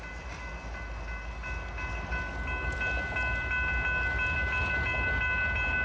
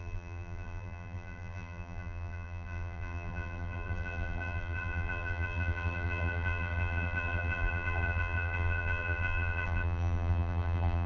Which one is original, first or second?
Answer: first